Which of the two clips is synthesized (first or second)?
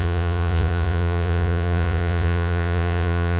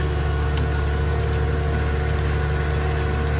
first